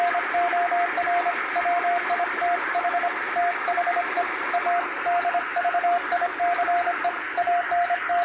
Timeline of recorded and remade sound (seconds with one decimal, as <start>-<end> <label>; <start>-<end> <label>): 0.0-8.2 recorded